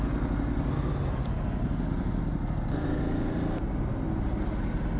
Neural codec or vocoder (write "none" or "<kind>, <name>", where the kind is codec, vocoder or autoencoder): none